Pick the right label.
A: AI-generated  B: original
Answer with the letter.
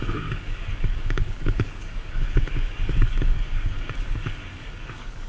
A